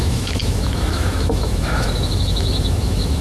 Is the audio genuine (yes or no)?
no